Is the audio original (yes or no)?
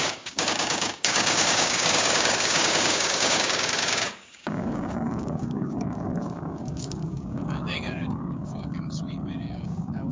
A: no